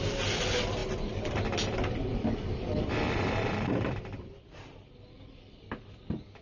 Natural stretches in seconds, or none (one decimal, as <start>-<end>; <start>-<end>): 0.0-0.8; 4.6-6.4